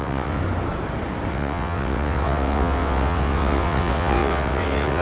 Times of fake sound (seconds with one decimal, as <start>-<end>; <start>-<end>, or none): 0.0-0.4; 1.3-5.0